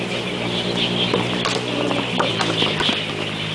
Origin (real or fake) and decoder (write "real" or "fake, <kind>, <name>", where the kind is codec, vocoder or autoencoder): real